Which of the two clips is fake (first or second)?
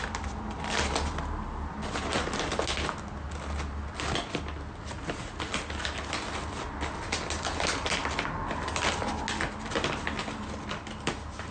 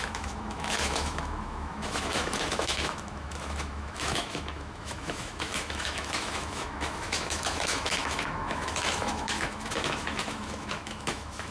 second